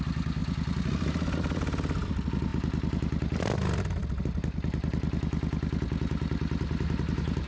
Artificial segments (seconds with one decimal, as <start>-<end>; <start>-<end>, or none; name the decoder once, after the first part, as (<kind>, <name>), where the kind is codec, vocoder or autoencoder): none